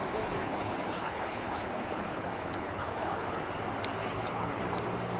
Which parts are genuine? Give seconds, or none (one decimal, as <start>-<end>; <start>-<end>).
0.0-0.4; 3.5-4.0; 4.6-5.2